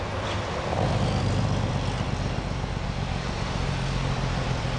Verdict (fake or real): fake